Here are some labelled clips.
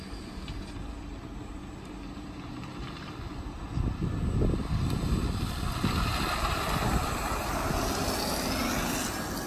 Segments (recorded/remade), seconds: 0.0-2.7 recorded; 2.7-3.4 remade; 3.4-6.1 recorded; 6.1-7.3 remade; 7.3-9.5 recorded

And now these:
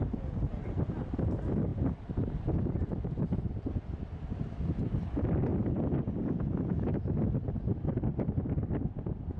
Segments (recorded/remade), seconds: 0.0-1.7 recorded; 1.7-4.7 remade; 4.7-5.5 recorded; 5.5-6.4 remade; 6.4-7.7 recorded; 7.7-8.3 remade; 8.3-9.4 recorded